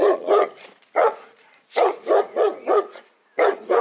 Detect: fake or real fake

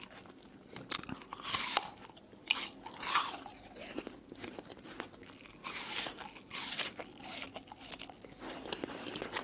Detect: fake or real real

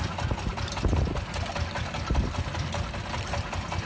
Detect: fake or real real